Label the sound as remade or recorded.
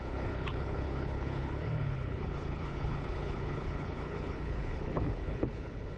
remade